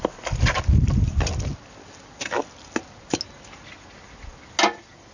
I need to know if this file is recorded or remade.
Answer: recorded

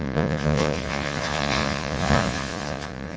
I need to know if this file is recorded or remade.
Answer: remade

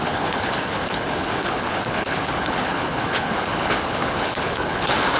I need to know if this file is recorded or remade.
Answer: remade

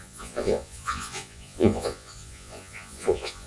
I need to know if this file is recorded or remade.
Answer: remade